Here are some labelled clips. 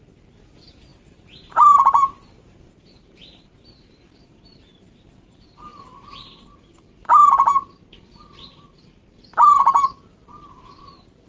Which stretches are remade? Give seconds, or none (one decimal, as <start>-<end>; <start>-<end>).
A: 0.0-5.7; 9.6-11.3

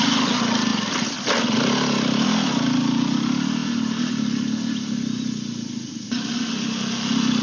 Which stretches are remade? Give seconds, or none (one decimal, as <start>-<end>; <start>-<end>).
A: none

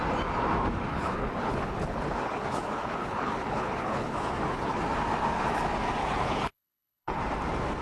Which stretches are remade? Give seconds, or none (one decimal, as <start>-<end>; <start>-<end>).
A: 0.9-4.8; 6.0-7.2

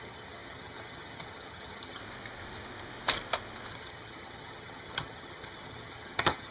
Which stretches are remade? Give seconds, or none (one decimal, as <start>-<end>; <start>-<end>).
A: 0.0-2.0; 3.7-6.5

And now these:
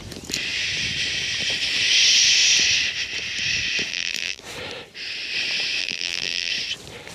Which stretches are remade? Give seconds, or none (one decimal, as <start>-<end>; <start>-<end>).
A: 3.9-4.4; 5.8-6.5

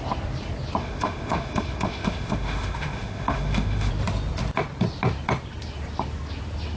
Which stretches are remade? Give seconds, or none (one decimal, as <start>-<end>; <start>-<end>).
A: 0.8-3.9